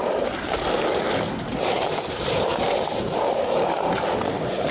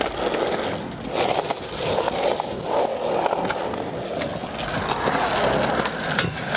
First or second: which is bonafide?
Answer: second